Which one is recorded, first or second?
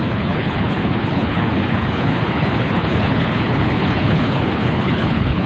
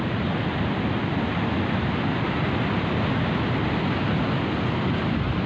second